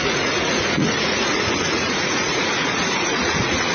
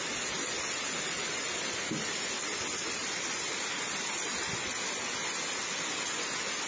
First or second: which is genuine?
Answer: second